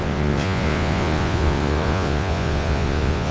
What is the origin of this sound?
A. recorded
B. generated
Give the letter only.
B